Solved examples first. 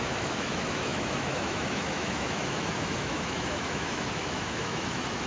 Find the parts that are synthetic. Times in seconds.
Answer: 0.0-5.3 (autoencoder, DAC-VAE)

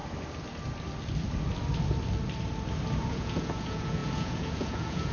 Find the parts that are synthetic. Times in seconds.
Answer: 3.1-5.1 (vocoder, Vocos)

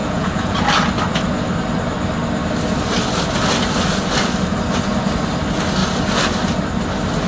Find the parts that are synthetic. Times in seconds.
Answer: 0.0-0.6 (vocoder, Vocos)

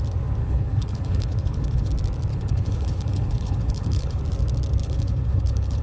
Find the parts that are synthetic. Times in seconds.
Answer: 0.4-1.9 (codec, HILCodec); 2.3-4.2; 4.8-5.8